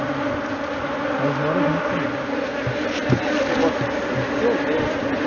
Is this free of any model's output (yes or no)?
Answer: yes